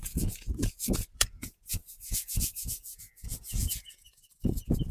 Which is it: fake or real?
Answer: fake